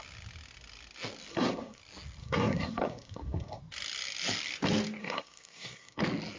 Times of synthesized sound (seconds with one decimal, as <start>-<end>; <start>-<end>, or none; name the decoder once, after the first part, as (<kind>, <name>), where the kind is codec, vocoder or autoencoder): 1.3-1.8 (codec, SNAC); 2.2-3.6; 5.0-6.0